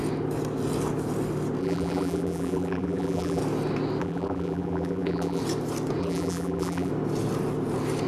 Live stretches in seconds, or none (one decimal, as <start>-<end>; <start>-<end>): 0.0-1.6; 3.4-4.0; 5.4-6.0; 6.9-8.1